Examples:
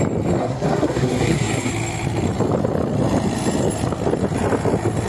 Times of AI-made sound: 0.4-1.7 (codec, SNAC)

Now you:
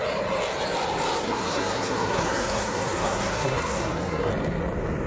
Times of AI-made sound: 1.2-4.3 (codec, SNAC)

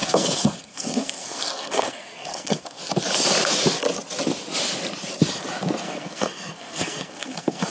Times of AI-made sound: 0.0-2.8 (codec, SNAC); 5.8-7.7

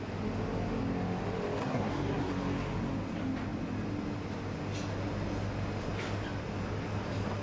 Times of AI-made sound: 1.6-2.3 (codec, SNAC)

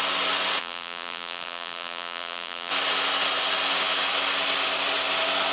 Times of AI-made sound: 0.6-2.7 (vocoder, BigVGAN v2)

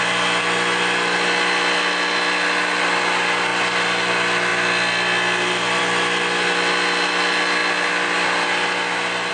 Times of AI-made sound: none

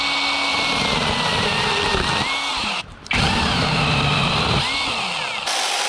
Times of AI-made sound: 0.5-1.7 (vocoder, BigVGAN v2); 2.5-4.3

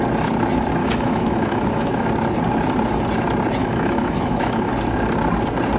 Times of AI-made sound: 0.8-2.1 (autoencoder, DAC-VAE); 3.6-4.7